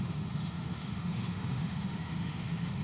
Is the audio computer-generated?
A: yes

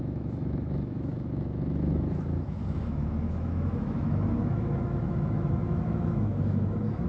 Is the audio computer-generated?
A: yes